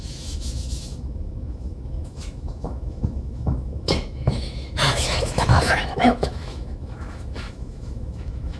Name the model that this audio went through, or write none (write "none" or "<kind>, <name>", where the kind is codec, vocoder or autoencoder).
autoencoder, DAC-VAE